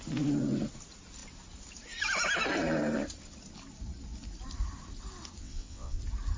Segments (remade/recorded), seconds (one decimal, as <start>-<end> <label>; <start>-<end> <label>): 0.0-5.4 recorded; 5.4-6.0 remade; 6.0-6.4 recorded